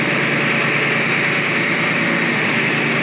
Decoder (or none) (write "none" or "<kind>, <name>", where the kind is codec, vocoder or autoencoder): none